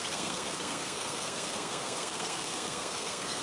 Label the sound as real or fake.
fake